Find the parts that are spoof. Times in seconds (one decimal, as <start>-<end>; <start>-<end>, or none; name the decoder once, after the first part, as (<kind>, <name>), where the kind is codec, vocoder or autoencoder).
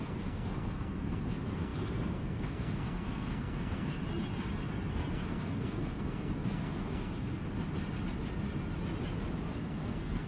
0.0-4.0 (codec, SNAC); 4.9-7.4; 9.5-10.3